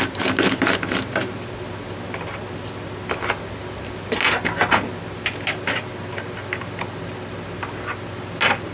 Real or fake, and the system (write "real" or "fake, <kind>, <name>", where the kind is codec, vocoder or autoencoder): real